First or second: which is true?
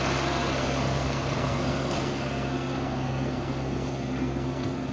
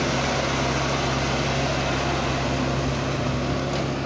second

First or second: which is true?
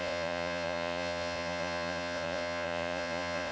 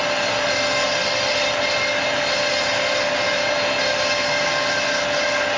second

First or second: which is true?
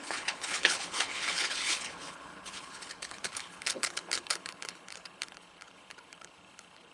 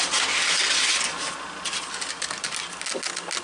second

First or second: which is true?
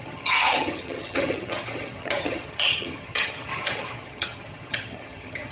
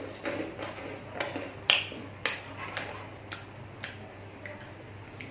second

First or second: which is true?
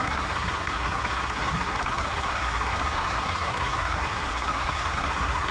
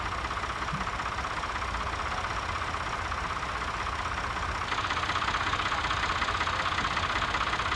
second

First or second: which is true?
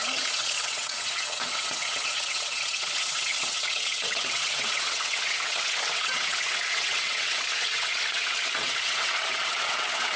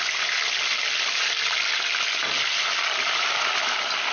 second